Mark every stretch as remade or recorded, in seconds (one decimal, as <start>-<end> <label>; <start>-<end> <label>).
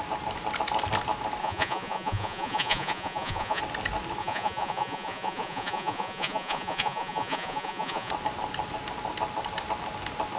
0.0-1.4 recorded; 1.4-3.6 remade; 3.6-4.2 recorded; 4.2-8.1 remade; 8.1-10.4 recorded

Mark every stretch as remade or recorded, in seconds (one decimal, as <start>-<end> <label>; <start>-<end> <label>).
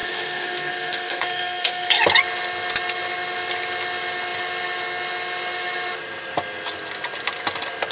0.0-2.0 remade; 2.0-7.9 recorded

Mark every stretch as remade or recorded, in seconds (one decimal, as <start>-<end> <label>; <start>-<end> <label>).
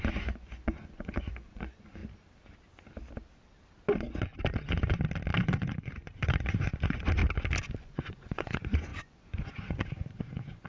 0.0-2.0 remade; 2.0-5.4 recorded; 5.4-7.2 remade; 7.2-7.8 recorded; 7.8-10.7 remade